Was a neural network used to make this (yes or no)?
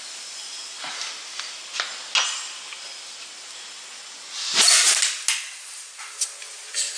no